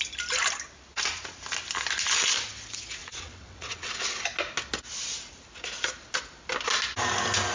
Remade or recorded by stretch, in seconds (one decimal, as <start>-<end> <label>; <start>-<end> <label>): 0.0-3.0 recorded; 3.0-4.0 remade; 4.0-7.5 recorded